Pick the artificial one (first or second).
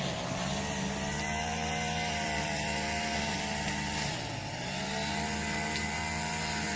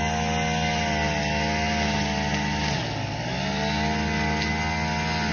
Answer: first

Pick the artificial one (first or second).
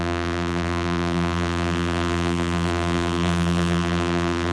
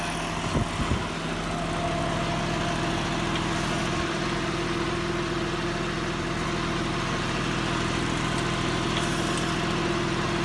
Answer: first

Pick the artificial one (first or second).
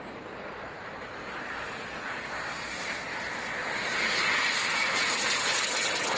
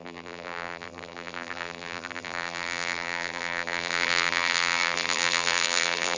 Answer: second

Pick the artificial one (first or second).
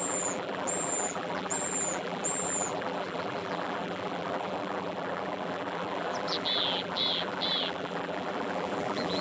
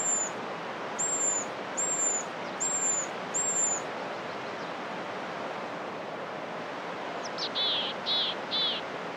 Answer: first